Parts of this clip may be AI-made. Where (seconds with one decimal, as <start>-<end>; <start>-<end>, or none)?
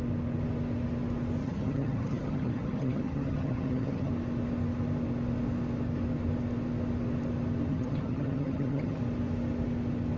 1.4-4.1; 7.7-9.0